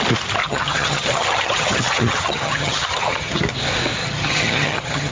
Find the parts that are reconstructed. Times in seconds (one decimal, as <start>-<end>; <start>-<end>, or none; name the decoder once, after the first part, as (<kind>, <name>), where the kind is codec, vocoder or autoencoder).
0.4-3.4 (vocoder, HiFi-GAN); 4.0-5.1